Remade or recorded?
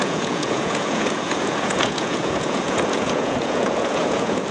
remade